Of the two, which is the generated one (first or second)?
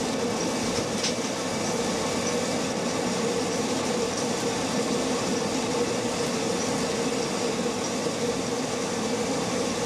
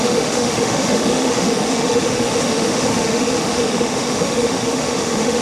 second